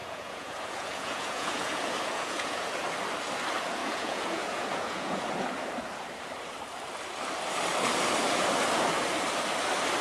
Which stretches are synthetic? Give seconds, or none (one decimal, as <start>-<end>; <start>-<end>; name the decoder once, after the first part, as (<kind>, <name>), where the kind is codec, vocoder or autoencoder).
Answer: 0.0-2.7 (vocoder, Vocos); 3.8-5.3